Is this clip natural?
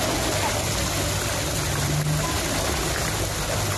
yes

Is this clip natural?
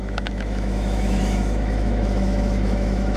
no